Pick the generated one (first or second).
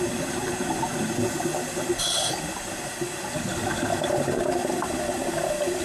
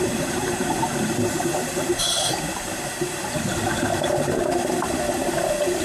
second